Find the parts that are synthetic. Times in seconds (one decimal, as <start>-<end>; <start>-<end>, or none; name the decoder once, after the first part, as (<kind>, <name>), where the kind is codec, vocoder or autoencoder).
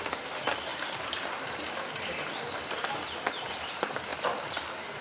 0.0-5.0 (vocoder, BigVGAN v2)